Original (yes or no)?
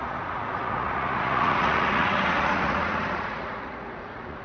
no